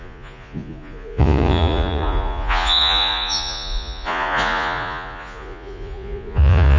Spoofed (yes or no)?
yes